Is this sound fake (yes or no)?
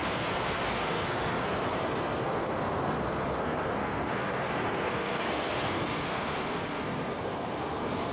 yes